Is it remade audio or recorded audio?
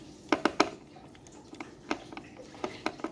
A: recorded